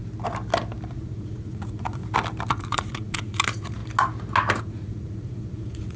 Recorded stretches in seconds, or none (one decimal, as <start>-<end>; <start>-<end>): 0.0-0.9; 2.0-2.5; 3.8-4.6